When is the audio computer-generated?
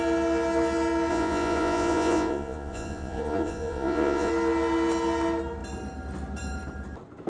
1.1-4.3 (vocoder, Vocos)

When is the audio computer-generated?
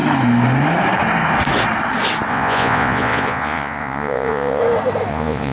2.3-4.6 (vocoder, Vocos); 5.1-5.5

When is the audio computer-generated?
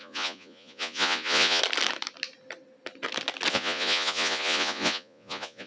0.0-1.6 (vocoder, Vocos); 3.5-5.7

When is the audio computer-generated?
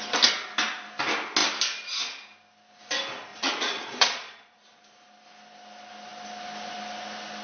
3.3-4.8 (vocoder, Vocos)